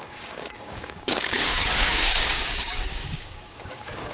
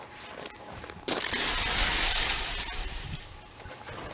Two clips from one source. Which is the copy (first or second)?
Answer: first